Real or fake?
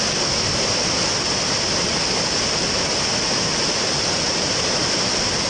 real